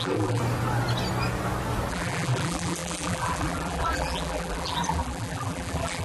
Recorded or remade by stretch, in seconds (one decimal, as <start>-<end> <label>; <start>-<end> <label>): 0.0-0.4 remade; 0.4-1.9 recorded; 1.9-6.0 remade